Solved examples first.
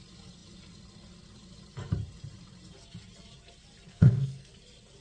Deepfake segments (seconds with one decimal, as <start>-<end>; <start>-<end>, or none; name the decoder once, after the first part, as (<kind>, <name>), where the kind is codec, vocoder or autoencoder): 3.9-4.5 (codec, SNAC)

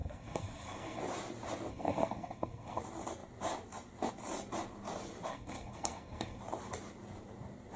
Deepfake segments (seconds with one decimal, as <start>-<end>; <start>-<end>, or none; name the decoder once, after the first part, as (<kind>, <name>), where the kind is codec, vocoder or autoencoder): 0.0-1.0 (codec, SNAC); 1.7-2.8; 5.3-6.4

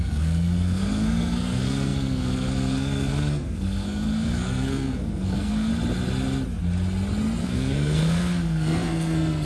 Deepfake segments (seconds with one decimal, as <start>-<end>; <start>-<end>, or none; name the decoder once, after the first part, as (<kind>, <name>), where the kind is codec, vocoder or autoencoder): 0.0-5.7 (codec, SNAC); 7.4-9.4

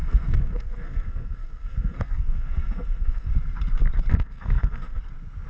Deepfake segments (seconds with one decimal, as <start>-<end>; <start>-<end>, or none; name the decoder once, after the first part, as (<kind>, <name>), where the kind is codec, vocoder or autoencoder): 0.0-3.3 (codec, SNAC); 4.1-5.0

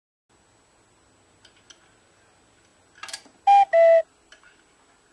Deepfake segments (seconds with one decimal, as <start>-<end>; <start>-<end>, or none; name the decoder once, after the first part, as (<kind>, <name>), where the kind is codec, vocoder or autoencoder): none